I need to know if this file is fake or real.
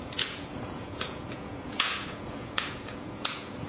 fake